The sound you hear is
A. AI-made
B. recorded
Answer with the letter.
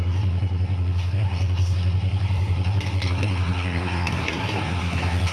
A